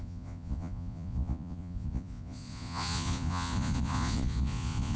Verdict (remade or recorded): remade